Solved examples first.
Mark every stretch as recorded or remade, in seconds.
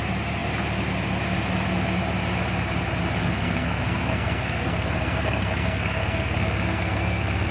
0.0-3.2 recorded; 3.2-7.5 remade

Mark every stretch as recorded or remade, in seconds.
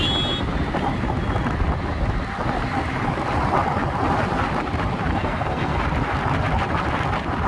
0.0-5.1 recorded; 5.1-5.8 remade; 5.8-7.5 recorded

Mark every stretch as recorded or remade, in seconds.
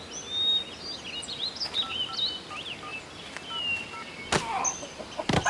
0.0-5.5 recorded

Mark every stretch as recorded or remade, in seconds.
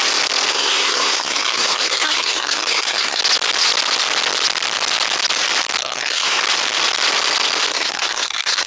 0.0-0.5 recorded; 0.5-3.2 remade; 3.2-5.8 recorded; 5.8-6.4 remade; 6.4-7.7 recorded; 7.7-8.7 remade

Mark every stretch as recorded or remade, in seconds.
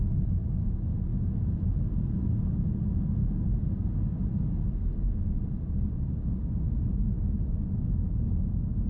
0.0-8.9 recorded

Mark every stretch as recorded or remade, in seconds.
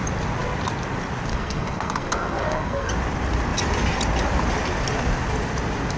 0.0-1.3 recorded; 1.3-2.9 remade; 2.9-6.0 recorded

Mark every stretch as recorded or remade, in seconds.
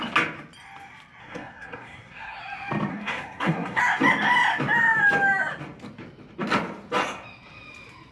0.0-1.2 recorded; 1.2-2.4 remade; 2.4-2.9 recorded; 2.9-3.8 remade; 3.8-8.1 recorded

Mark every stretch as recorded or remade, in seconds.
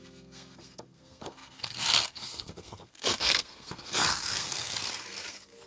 0.0-5.7 remade